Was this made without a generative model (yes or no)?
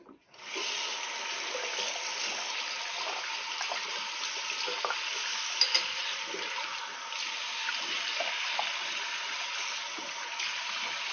yes